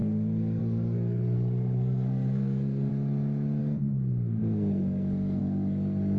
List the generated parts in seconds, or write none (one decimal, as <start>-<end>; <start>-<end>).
0.0-2.9; 3.6-6.2